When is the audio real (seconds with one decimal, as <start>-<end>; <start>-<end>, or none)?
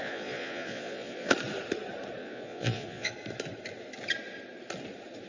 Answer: 1.3-2.2; 3.1-5.3